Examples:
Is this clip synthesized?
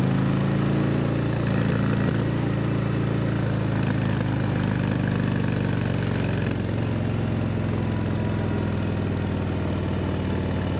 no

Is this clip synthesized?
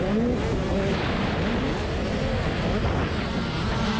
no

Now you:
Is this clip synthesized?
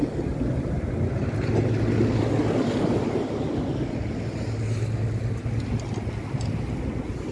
no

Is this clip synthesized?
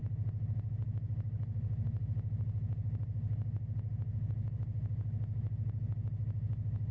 no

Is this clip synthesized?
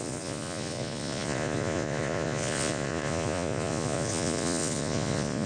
yes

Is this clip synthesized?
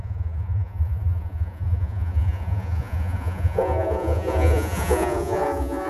yes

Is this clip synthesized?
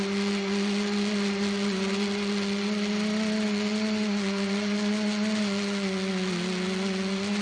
no